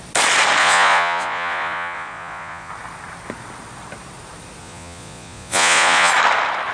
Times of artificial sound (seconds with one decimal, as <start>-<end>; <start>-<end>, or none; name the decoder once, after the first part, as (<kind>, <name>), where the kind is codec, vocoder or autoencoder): 0.6-2.7 (vocoder, Vocos); 4.6-6.1